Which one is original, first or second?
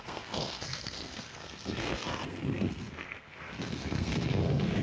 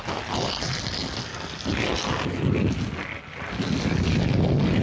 second